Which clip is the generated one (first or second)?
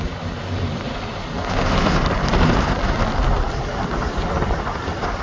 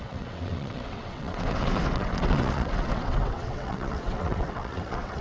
second